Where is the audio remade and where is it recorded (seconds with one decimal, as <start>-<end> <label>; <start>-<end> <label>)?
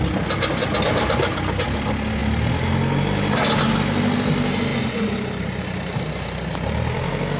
0.0-7.4 recorded